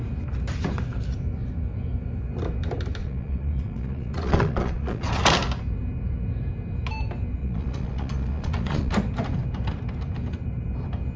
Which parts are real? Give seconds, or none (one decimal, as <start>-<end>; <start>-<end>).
0.0-3.0; 5.2-7.4; 8.9-11.2